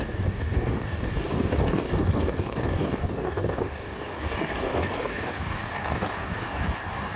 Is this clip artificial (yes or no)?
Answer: yes